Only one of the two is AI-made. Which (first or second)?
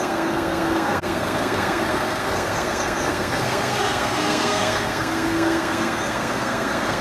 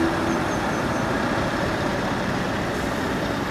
first